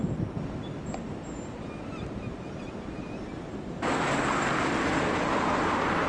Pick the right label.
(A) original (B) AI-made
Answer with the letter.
A